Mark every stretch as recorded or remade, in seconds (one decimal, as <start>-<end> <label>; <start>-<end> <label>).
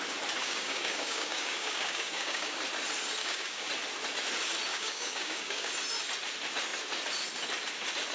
0.0-0.4 recorded; 0.4-2.6 remade; 2.6-3.2 recorded; 3.2-3.7 remade; 3.7-4.7 recorded; 4.7-5.7 remade; 5.7-8.1 recorded